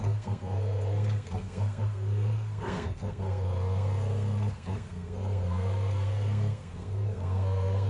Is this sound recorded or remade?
remade